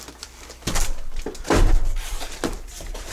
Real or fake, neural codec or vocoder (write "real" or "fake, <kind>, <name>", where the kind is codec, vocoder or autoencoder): fake, vocoder, BigVGAN v2